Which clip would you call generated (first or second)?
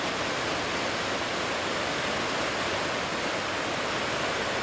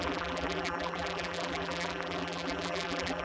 second